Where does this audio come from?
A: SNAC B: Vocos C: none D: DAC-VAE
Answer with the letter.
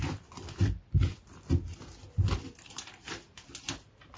C